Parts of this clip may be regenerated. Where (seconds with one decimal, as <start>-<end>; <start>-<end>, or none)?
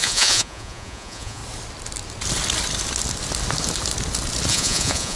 0.0-1.4; 4.5-5.2